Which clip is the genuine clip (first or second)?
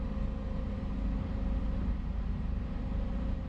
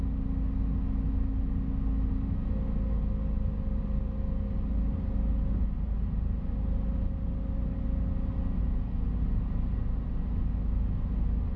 second